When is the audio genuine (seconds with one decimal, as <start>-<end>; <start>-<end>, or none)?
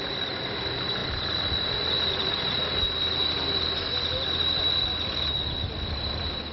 0.0-6.5